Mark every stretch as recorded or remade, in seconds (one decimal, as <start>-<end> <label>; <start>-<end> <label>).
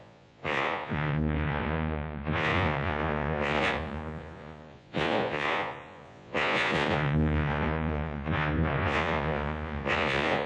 0.0-10.5 remade